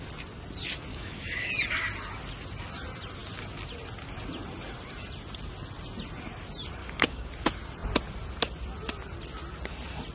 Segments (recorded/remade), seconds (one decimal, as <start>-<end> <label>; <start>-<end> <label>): 0.0-0.9 recorded; 0.9-1.5 remade; 1.5-6.8 recorded; 6.8-7.3 remade; 7.3-10.1 recorded